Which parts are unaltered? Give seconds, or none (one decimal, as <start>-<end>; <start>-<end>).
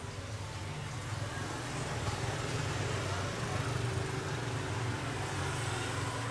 0.0-6.3